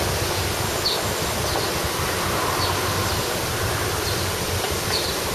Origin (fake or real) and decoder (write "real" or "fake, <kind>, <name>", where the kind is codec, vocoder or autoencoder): real